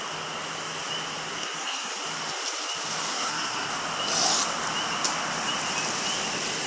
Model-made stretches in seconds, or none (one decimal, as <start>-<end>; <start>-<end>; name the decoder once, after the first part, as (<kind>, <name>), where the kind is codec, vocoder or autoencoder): 1.4-1.9 (codec, SNAC); 3.1-3.7